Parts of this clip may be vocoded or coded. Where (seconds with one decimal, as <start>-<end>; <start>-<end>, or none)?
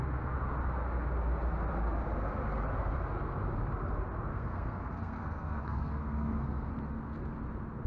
4.3-6.7